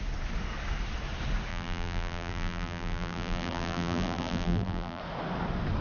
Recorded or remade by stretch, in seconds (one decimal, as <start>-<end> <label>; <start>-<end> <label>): 0.0-1.5 recorded; 1.5-5.0 remade; 5.0-5.8 recorded